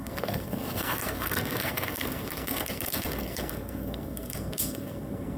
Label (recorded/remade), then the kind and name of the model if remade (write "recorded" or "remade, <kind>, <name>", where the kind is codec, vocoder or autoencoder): remade, codec, SNAC